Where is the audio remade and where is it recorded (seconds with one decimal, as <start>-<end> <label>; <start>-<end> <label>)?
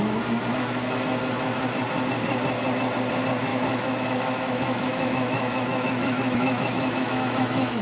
0.0-3.5 recorded; 3.5-7.8 remade